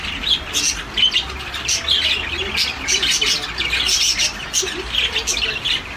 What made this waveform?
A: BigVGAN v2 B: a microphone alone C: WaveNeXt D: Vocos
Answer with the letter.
B